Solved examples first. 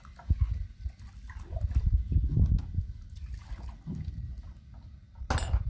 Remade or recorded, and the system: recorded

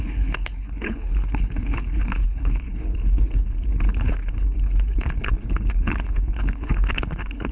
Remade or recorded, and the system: remade, codec, HILCodec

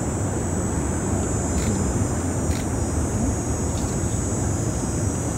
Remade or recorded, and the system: recorded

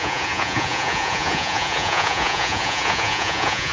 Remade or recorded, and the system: remade, vocoder, Vocos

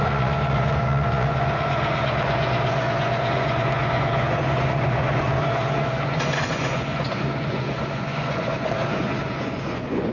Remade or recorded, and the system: remade, vocoder, Vocos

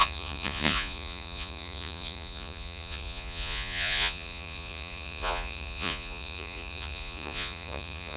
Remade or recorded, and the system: remade, vocoder, Vocos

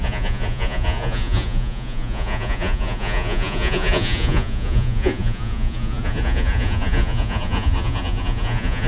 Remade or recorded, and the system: remade, vocoder, Vocos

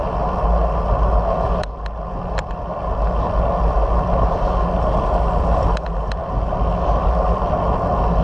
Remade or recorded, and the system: recorded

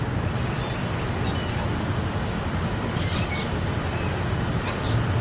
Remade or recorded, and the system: remade, vocoder, BigVGAN v2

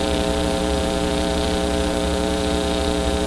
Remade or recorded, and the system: remade, vocoder, BigVGAN v2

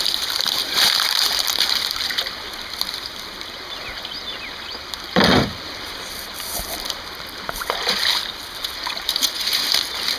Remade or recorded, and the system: remade, vocoder, BigVGAN v2